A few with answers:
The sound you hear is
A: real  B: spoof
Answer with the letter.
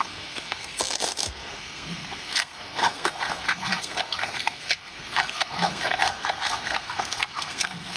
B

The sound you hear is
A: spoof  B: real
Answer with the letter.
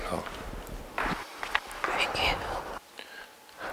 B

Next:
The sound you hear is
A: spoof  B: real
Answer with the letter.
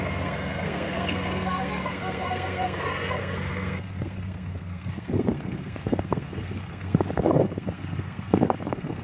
A